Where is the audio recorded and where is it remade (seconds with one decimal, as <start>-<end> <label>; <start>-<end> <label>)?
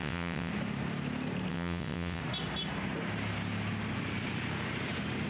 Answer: 0.0-0.5 remade; 0.5-1.5 recorded; 1.5-2.2 remade; 2.2-5.3 recorded